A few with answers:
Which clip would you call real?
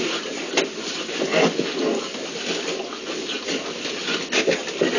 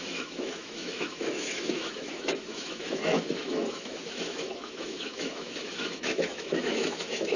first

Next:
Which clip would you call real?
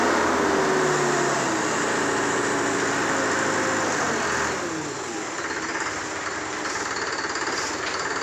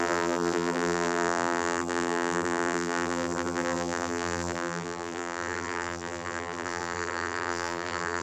first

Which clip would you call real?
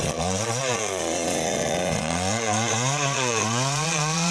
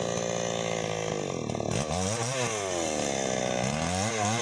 second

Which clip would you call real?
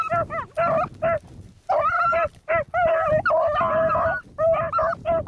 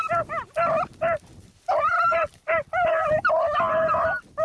first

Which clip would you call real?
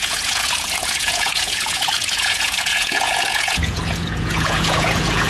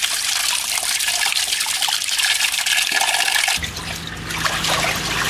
second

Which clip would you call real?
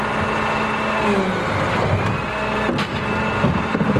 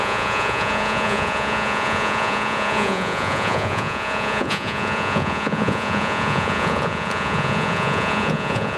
first